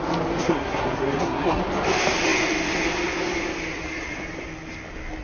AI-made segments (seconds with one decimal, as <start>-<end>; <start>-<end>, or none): 0.4-1.6